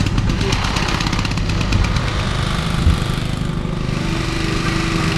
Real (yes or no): yes